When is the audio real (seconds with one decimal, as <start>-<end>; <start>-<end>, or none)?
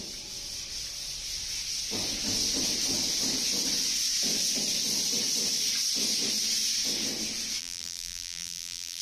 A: 0.0-7.6